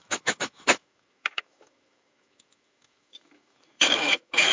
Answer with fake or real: fake